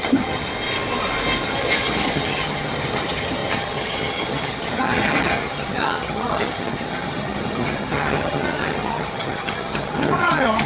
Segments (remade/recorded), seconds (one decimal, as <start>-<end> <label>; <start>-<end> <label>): 0.0-0.5 remade; 0.5-1.4 recorded; 1.4-10.7 remade